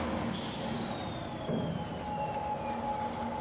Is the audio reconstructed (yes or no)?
no